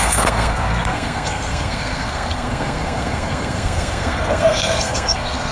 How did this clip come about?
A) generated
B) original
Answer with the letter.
A